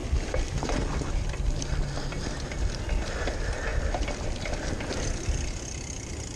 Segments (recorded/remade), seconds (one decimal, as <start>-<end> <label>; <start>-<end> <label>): 0.0-6.4 remade